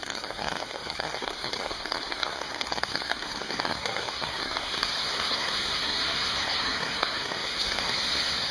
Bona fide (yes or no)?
no